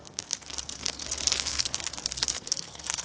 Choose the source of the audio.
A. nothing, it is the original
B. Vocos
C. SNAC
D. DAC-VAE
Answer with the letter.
C